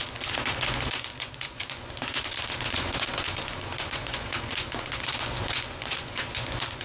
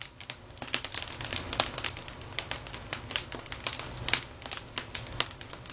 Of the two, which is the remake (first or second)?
first